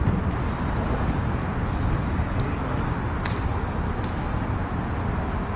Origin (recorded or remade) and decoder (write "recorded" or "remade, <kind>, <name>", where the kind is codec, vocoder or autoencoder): recorded